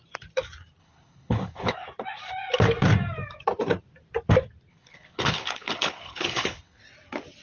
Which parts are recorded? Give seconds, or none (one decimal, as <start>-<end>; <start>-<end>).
0.0-0.8; 1.7-4.7; 6.8-7.4